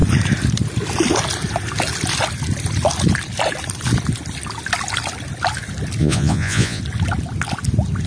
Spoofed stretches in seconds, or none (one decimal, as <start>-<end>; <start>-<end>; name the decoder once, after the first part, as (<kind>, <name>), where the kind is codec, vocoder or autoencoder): 6.0-6.8 (vocoder, Vocos)